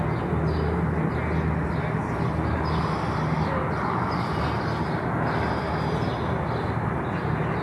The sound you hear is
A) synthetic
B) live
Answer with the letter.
B